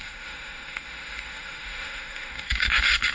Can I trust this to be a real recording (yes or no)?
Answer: no